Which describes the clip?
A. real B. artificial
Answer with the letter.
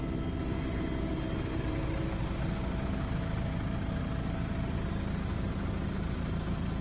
A